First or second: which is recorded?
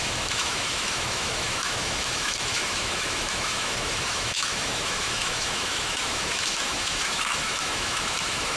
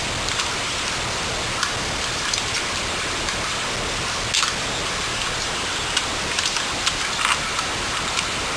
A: second